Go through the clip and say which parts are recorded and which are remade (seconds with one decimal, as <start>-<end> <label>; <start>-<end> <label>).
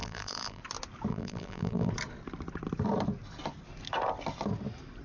0.0-0.6 remade; 0.6-1.1 recorded; 1.1-1.9 remade; 1.9-5.0 recorded